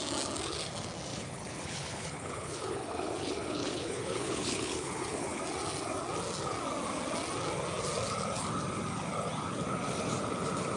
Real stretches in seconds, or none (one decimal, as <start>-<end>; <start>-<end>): 0.0-1.1; 5.4-10.8